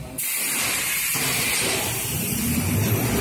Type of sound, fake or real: real